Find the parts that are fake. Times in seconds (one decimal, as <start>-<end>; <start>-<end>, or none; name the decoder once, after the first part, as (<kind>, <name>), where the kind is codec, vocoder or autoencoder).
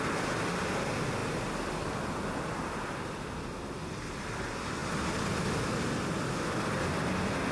none